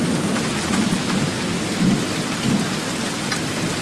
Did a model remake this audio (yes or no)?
no